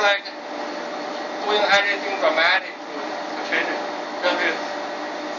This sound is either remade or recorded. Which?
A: recorded